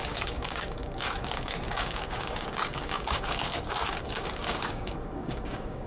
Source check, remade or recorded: remade